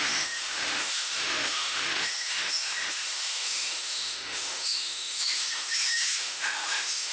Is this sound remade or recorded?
remade